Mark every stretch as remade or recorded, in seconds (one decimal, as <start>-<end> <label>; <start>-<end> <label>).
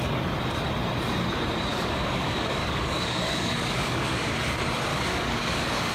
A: 0.0-1.7 recorded; 1.7-4.3 remade; 4.3-4.9 recorded; 4.9-5.9 remade